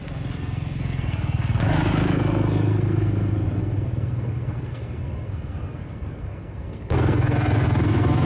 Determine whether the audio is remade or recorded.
remade